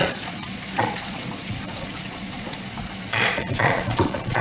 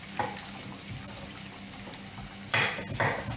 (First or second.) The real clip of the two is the second